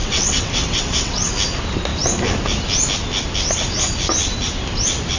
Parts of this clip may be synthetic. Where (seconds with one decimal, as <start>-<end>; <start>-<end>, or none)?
0.0-1.3